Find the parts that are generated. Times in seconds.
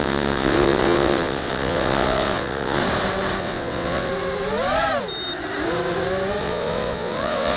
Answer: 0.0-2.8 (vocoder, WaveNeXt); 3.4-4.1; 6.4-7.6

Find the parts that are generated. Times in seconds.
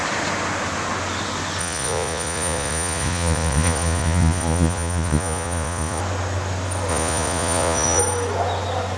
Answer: 1.6-6.0 (vocoder, Vocos); 6.9-8.0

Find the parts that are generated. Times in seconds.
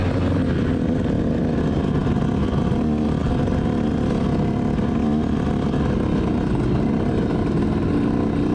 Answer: none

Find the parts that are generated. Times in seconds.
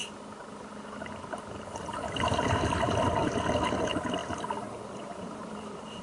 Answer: 1.1-3.2 (vocoder, BigVGAN v2); 3.7-4.2; 4.9-6.0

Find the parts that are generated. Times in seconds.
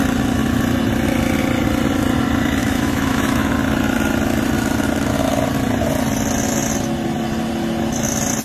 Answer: 2.6-3.5 (autoencoder, DAC-VAE)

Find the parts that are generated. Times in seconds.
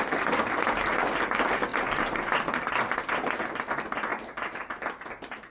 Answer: 1.7-2.7 (vocoder, BigVGAN v2); 4.1-5.5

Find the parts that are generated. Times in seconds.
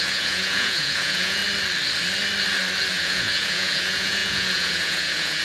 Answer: 0.0-1.4 (vocoder, Vocos); 2.9-5.4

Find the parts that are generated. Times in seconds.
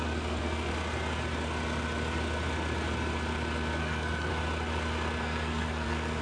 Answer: 0.0-0.7 (codec, SNAC); 3.8-4.3; 5.2-6.2